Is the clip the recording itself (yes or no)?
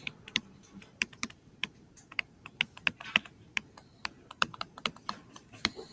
no